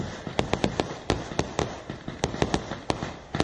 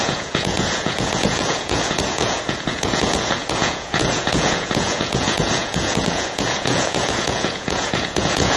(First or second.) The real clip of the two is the first